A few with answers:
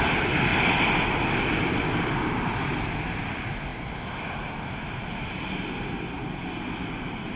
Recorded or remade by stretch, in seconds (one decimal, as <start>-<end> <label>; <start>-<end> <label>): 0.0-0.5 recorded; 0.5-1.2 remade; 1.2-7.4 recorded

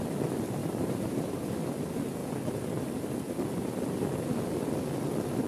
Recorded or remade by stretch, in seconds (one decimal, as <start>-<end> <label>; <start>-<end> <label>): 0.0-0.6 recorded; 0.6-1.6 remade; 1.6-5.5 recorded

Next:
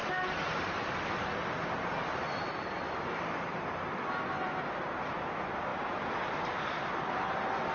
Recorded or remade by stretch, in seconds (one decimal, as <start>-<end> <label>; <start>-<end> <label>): 0.0-0.9 remade; 0.9-7.7 recorded

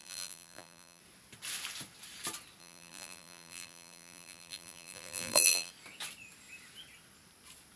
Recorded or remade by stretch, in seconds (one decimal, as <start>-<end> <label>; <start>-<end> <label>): 0.0-1.0 remade; 1.0-2.6 recorded; 2.6-5.7 remade; 5.7-7.8 recorded

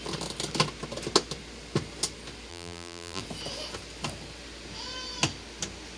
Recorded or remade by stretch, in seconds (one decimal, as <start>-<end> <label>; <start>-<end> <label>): 0.0-2.5 recorded; 2.5-3.2 remade; 3.2-6.0 recorded

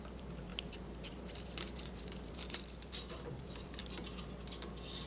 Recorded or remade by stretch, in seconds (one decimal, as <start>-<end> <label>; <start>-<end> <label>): 0.0-3.8 remade; 3.8-5.1 recorded